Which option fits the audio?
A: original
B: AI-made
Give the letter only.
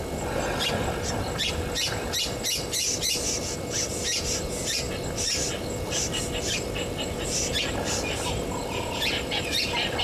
A